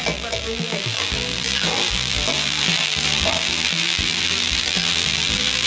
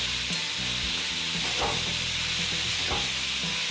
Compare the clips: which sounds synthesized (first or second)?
first